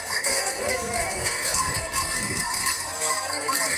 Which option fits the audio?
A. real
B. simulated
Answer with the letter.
B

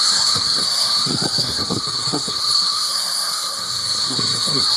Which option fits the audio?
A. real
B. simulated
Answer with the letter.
B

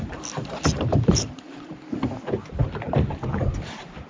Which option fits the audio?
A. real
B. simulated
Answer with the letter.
A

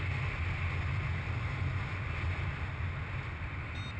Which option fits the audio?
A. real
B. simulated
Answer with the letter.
A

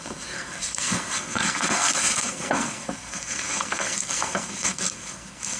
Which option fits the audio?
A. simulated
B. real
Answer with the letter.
A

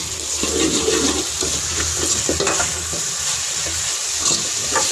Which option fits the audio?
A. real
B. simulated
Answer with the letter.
A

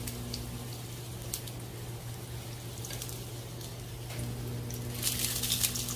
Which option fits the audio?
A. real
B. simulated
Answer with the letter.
A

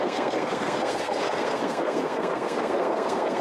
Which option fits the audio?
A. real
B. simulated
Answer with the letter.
B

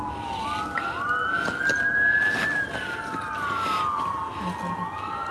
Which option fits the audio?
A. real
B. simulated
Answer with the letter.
A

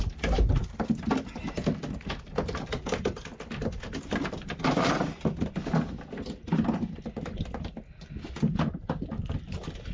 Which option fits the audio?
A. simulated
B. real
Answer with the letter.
B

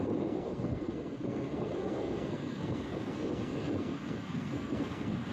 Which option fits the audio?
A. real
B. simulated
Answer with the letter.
B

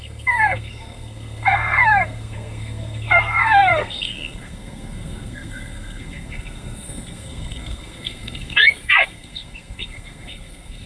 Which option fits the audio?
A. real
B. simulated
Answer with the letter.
B